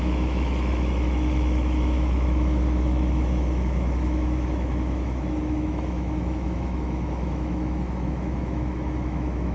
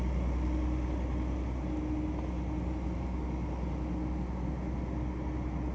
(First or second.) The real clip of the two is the second